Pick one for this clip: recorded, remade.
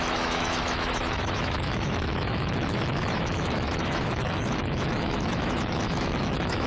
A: remade